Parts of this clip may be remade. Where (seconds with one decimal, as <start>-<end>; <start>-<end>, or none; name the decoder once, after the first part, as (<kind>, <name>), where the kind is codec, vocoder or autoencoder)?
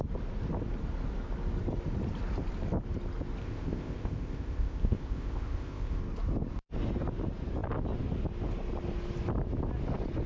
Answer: 3.4-6.0 (codec, ZipCodec)